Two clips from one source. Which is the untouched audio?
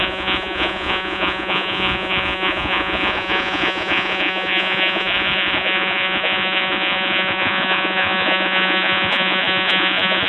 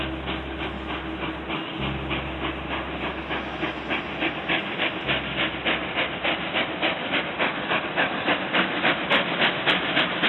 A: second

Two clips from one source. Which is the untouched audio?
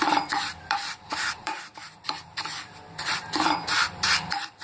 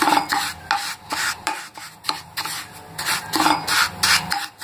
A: second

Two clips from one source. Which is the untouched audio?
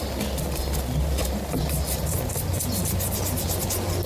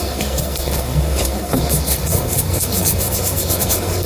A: first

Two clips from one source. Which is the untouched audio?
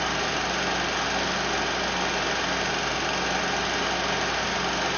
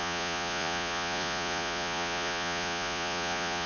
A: first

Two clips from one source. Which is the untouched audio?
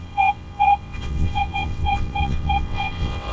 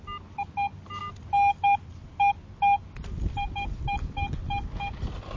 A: second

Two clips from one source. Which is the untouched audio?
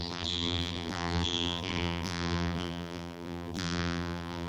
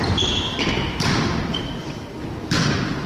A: second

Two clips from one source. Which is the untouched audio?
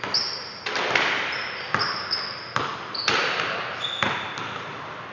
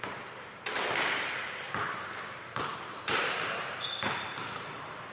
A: first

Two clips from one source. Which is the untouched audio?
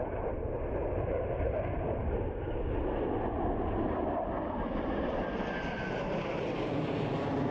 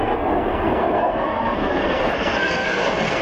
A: first